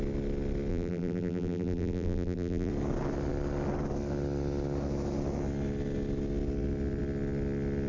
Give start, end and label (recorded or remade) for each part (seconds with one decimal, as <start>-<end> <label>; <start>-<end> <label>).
0.0-0.7 recorded; 0.7-2.7 remade; 2.7-7.9 recorded